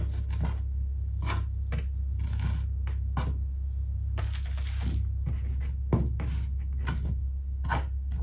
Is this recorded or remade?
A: recorded